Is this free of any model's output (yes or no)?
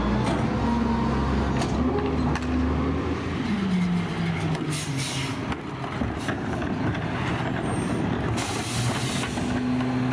yes